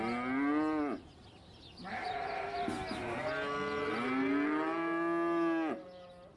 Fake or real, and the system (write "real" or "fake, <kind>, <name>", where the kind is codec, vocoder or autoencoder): real